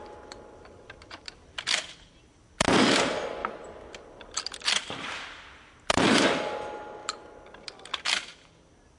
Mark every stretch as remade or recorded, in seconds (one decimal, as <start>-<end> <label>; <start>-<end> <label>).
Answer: 0.0-9.0 recorded

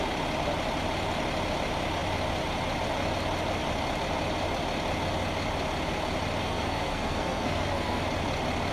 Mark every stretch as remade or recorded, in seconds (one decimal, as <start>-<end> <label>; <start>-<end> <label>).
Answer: 0.0-6.4 recorded; 6.4-8.0 remade; 8.0-8.7 recorded

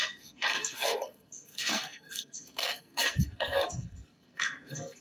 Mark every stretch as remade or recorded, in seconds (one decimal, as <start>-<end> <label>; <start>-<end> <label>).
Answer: 0.0-5.0 remade

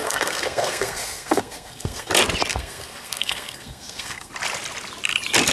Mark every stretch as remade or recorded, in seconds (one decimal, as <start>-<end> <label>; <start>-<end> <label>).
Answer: 0.0-2.1 remade; 2.1-2.5 recorded; 2.5-4.3 remade; 4.3-5.5 recorded

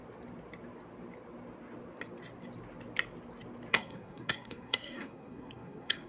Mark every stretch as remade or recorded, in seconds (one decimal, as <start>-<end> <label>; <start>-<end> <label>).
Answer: 0.0-3.7 recorded; 3.7-6.1 remade